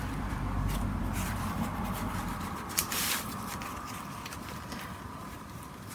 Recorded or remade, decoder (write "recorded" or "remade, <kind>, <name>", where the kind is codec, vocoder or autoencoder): remade, vocoder, BigVGAN v2